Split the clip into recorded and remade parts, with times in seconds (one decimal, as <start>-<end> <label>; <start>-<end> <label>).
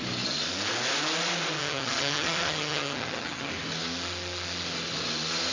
0.0-1.6 recorded; 1.6-3.5 remade; 3.5-5.5 recorded